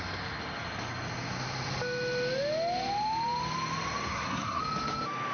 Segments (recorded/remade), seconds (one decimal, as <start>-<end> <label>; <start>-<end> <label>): 0.0-4.1 recorded; 4.1-4.6 remade; 4.6-5.3 recorded